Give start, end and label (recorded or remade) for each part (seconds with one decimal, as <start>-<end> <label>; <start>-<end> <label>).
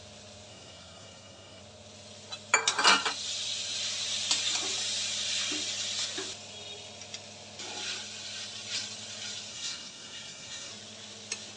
0.0-0.5 recorded; 0.5-1.6 remade; 1.6-9.5 recorded; 9.5-10.7 remade; 10.7-11.6 recorded